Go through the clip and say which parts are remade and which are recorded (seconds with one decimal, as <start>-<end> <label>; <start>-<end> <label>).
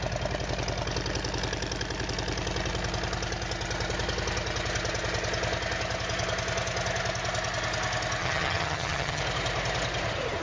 0.0-8.2 recorded; 8.2-9.2 remade; 9.2-10.4 recorded